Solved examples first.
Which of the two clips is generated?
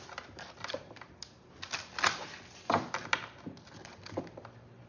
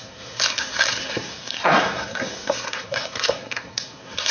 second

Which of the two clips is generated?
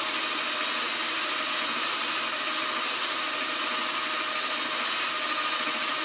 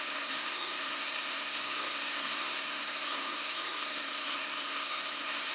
second